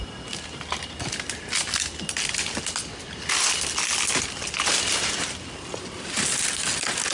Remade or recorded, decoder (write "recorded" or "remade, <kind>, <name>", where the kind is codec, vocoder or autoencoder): recorded